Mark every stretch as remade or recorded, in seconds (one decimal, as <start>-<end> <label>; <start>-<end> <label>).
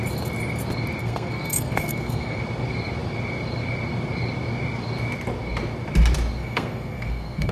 0.0-1.0 recorded; 1.0-2.4 remade; 2.4-6.4 recorded; 6.4-7.5 remade